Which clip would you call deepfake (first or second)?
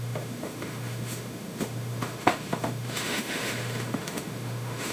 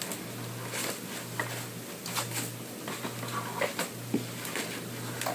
first